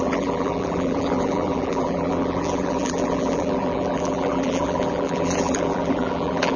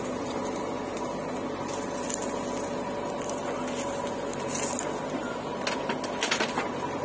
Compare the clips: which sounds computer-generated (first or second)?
first